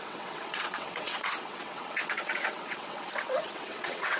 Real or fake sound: fake